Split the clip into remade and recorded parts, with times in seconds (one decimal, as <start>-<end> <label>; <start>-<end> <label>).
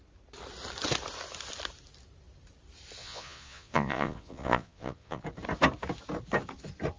0.0-3.0 recorded; 3.0-5.2 remade; 5.2-7.0 recorded